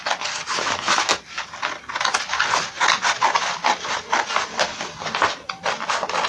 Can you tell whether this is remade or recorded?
recorded